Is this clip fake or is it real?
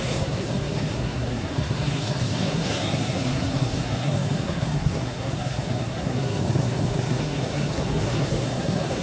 fake